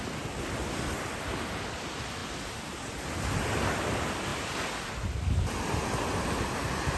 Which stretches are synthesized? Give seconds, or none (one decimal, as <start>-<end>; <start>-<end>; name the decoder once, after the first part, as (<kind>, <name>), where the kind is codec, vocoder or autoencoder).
none